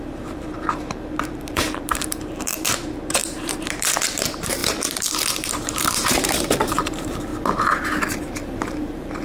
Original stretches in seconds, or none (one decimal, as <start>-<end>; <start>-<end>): 7.3-8.2